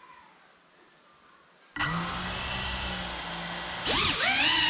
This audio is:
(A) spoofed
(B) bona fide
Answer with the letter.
B